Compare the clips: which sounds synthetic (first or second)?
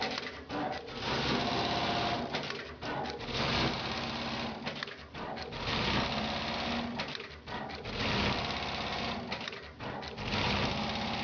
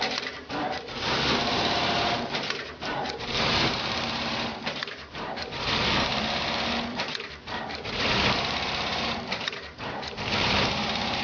second